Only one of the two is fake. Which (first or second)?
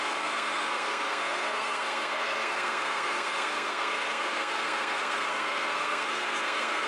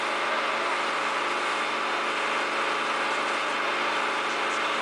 first